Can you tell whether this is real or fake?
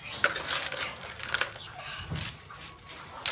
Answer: real